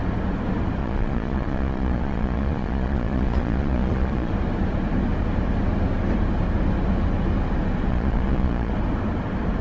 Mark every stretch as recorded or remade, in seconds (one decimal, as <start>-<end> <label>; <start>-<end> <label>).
0.0-0.8 recorded; 0.8-4.3 remade; 4.3-7.9 recorded; 7.9-8.7 remade; 8.7-9.6 recorded